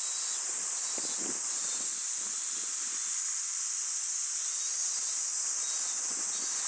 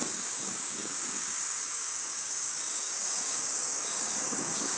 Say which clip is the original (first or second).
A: first